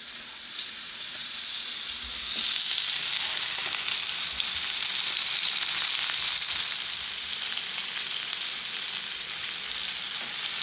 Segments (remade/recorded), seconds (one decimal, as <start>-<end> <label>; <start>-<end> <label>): 0.0-0.5 recorded; 0.5-1.3 remade; 1.3-10.6 recorded